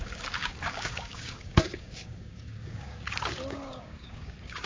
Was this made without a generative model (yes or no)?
no